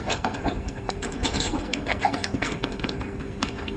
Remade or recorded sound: remade